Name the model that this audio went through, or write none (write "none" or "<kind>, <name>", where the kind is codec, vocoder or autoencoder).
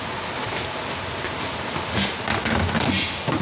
none